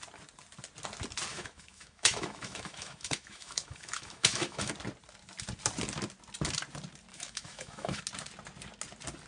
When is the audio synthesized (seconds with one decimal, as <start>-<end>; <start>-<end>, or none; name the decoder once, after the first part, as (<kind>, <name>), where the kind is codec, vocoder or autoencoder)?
1.3-4.7 (autoencoder, DAC-VAE); 7.1-8.0